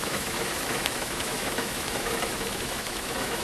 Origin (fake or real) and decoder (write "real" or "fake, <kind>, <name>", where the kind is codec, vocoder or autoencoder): fake, autoencoder, DAC-VAE